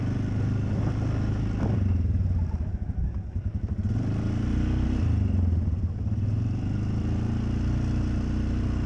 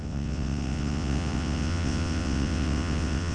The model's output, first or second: second